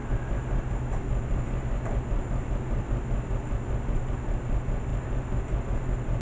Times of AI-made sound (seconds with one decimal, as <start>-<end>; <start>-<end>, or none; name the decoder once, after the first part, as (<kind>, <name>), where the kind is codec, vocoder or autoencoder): none